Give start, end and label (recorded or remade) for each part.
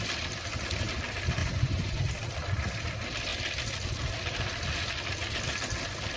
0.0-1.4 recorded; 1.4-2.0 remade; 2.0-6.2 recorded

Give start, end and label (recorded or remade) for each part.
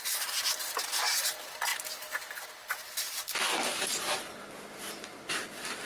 0.0-5.9 recorded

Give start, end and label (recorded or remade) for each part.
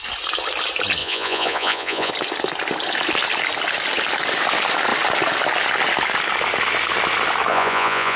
0.0-1.0 recorded; 1.0-2.1 remade; 2.1-7.5 recorded; 7.5-8.2 remade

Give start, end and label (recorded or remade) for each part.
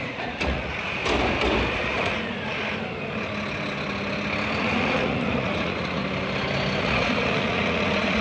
0.0-1.0 remade; 1.0-1.7 recorded; 1.7-2.6 remade; 2.6-4.6 recorded; 4.6-6.0 remade; 6.0-6.8 recorded; 6.8-8.2 remade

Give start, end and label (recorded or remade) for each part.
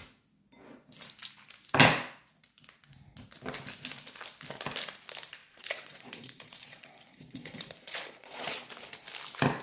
0.0-5.4 recorded; 5.4-8.7 remade; 8.7-9.6 recorded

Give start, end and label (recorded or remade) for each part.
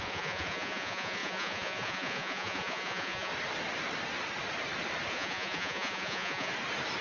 0.0-3.3 remade; 3.3-5.1 recorded; 5.1-6.5 remade; 6.5-7.0 recorded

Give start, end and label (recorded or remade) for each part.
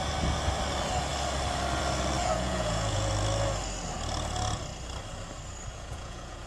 0.0-2.2 recorded; 2.2-3.1 remade; 3.1-5.7 recorded; 5.7-6.5 remade